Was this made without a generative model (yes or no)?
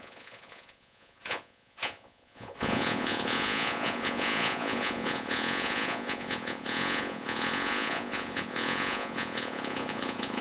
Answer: no